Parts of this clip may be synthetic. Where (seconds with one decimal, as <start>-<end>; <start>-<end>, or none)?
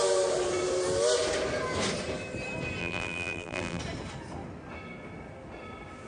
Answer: 2.8-3.8